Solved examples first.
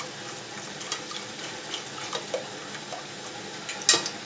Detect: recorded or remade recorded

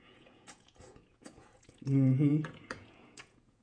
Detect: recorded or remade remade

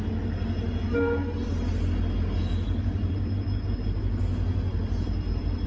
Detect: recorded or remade recorded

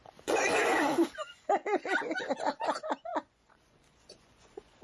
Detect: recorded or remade remade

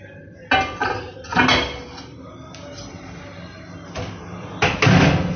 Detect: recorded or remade recorded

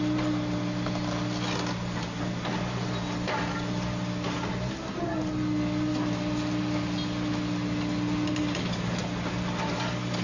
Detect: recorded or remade recorded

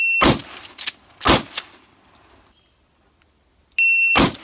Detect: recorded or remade recorded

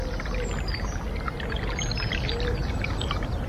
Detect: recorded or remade recorded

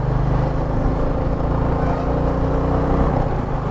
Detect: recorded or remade recorded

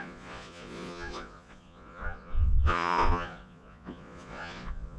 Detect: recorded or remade remade